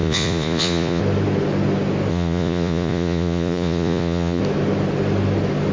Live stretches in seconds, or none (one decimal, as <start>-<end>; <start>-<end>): 1.0-2.1; 4.4-5.7